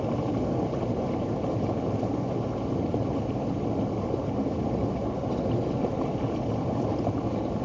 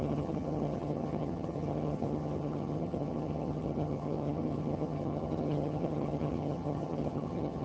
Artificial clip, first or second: second